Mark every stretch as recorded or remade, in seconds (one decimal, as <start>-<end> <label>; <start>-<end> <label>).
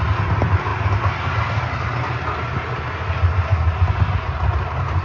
0.0-5.0 recorded